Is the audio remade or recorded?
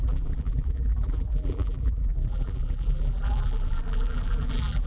remade